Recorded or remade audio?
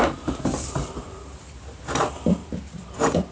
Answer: recorded